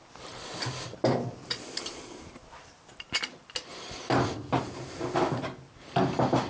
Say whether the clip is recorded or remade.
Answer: recorded